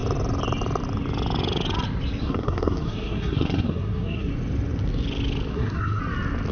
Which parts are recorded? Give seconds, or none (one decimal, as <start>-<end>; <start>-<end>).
0.0-2.2; 4.3-5.5; 6.0-6.5